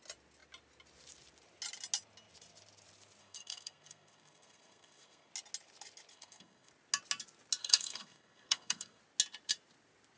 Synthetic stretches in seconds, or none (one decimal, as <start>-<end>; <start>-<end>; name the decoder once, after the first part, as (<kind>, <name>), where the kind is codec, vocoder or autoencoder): 3.2-5.3 (codec, SNAC); 6.1-6.7; 7.6-9.0